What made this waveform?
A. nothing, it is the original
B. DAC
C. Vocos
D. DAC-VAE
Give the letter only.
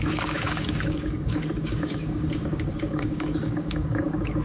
B